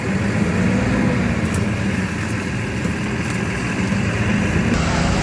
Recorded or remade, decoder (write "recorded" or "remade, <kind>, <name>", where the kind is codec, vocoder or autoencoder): recorded